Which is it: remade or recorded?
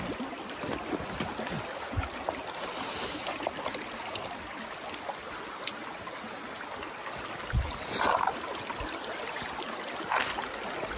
recorded